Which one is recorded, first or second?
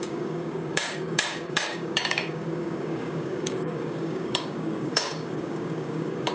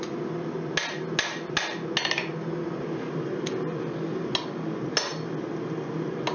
second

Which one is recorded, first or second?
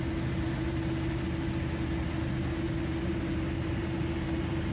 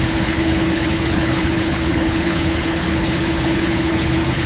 first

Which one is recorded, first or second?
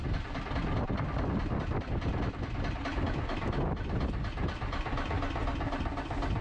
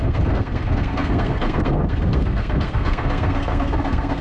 first